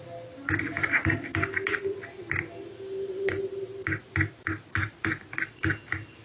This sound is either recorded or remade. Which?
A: recorded